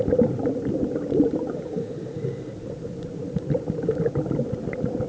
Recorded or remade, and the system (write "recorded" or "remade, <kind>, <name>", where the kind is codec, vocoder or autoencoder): recorded